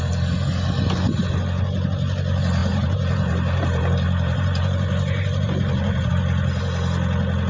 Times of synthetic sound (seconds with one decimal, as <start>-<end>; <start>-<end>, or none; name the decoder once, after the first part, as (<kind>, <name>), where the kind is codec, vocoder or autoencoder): 2.6-6.1 (vocoder, BigVGAN v2)